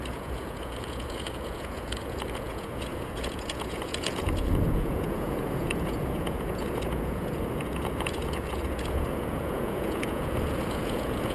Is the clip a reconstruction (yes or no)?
yes